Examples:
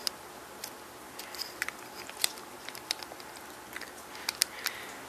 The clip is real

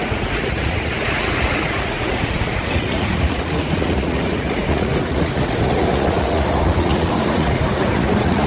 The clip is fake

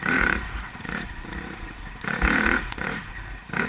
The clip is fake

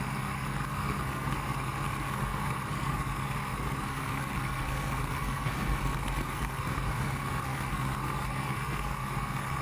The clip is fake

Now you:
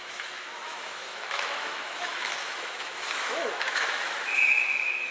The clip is fake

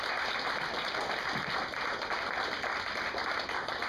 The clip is fake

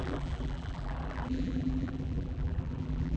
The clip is fake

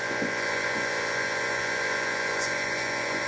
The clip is fake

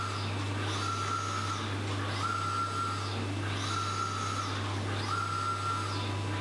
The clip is real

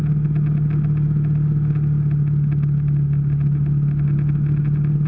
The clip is real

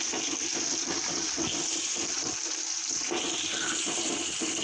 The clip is real